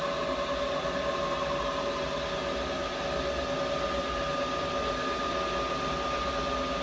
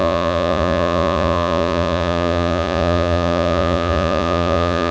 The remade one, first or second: second